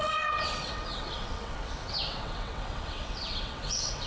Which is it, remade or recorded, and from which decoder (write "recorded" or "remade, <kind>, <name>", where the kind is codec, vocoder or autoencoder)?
remade, vocoder, WaveNeXt